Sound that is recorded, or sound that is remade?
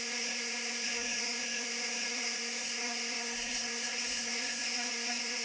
remade